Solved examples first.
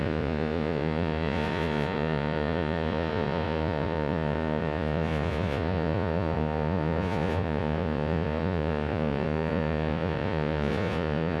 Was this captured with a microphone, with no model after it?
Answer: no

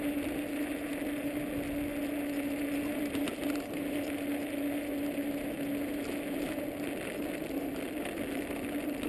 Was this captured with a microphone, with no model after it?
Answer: yes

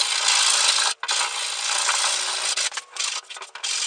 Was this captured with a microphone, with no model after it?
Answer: yes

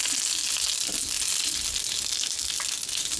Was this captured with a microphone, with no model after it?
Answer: yes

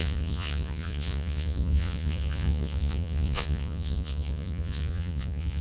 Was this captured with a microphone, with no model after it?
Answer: no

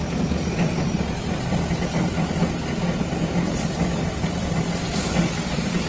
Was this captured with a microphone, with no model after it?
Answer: yes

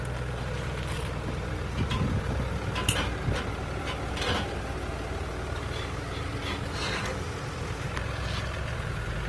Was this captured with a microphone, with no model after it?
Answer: yes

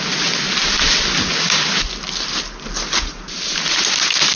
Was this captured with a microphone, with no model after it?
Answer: yes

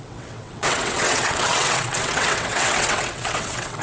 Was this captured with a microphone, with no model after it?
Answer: no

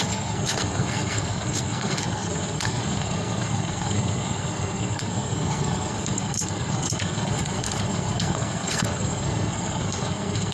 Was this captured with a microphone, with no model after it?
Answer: no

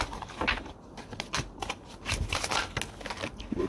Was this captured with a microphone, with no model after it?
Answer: yes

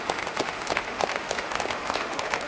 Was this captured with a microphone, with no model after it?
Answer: no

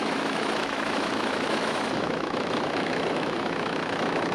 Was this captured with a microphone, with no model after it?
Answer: no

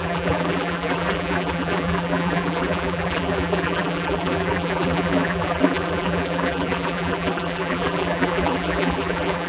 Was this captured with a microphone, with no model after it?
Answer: no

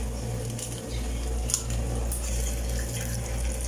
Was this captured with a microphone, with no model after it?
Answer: yes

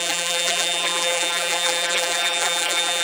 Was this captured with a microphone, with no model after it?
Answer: no